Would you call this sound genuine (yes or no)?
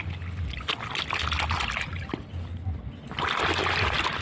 yes